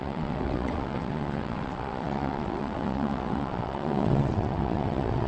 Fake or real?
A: fake